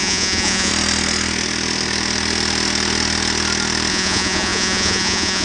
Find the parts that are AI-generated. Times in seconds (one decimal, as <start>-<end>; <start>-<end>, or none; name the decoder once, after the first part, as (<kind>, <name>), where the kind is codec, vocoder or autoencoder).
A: 0.0-0.7 (vocoder, Vocos); 3.9-5.4